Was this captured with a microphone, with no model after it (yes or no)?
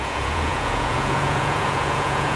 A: no